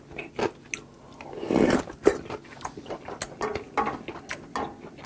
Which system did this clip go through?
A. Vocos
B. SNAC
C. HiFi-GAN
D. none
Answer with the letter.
D